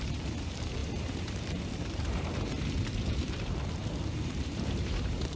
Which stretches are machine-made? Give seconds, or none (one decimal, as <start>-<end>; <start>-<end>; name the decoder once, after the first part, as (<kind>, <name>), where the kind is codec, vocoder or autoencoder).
0.0-5.4 (vocoder, BigVGAN v2)